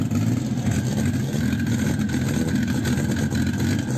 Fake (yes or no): no